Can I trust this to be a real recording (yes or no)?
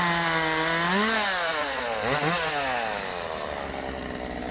yes